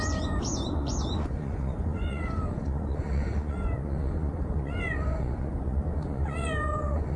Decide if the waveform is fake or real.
fake